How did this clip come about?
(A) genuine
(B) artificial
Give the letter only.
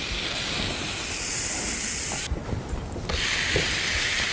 A